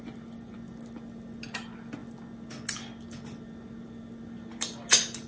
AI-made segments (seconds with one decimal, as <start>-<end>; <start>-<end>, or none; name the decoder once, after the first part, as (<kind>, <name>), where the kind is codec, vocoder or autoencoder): none